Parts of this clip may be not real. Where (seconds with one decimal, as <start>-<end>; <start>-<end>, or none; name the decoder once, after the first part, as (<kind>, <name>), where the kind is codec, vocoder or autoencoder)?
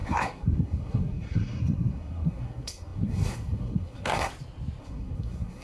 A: 0.0-4.3 (codec, SNAC); 4.8-5.6